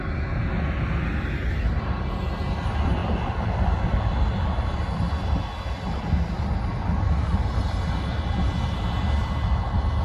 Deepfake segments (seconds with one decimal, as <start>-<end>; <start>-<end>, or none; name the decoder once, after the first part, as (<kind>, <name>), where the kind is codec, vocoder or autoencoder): none